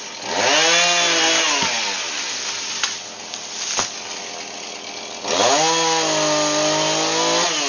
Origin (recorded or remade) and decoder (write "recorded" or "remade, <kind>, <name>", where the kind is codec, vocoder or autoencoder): recorded